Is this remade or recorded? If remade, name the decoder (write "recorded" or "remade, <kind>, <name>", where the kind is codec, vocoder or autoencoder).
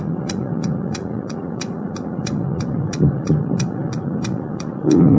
remade, vocoder, Vocos